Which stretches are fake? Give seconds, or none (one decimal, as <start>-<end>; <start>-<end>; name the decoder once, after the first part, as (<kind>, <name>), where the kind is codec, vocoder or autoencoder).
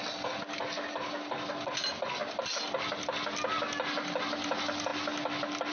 none